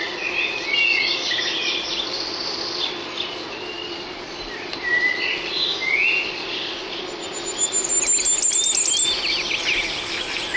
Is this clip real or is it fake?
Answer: real